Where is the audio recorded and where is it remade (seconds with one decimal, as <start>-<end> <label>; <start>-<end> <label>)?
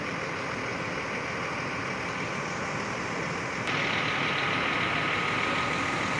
0.0-6.2 recorded